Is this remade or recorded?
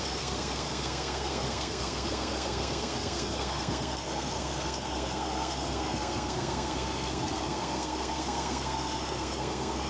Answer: remade